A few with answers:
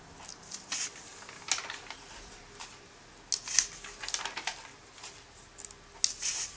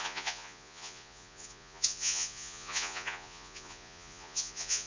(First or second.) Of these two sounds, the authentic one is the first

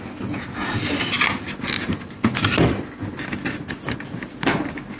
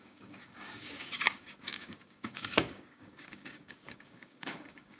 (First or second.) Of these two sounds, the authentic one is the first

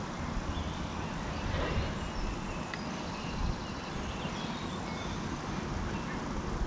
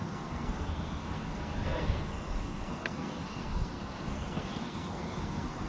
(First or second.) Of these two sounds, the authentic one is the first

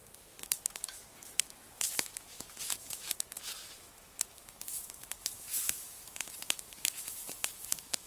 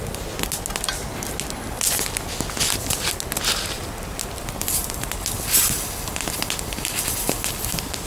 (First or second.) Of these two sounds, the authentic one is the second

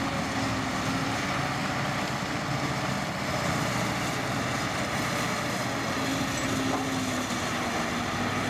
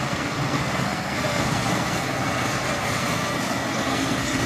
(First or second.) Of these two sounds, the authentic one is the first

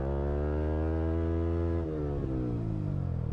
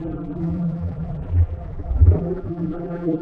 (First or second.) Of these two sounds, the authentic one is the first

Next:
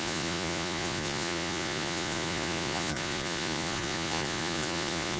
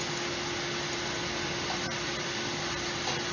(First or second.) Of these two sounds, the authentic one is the second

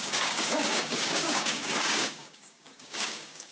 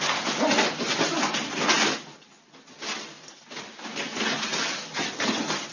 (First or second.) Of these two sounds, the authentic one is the second